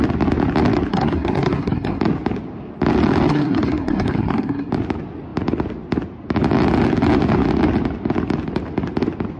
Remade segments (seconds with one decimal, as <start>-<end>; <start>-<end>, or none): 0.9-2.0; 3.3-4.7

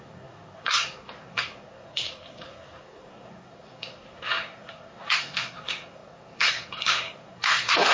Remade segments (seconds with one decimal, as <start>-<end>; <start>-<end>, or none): 0.0-7.9

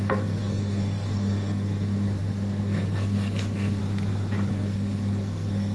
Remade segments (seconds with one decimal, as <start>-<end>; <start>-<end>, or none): 0.0-3.8; 4.5-5.7

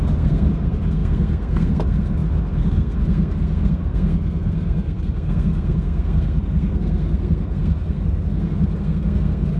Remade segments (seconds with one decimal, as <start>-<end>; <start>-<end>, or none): 0.0-9.6

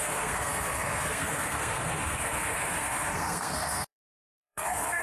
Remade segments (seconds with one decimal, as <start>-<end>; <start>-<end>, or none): 0.0-5.0